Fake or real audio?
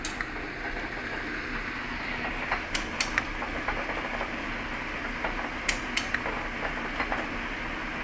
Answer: real